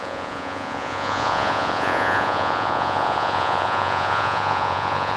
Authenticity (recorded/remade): remade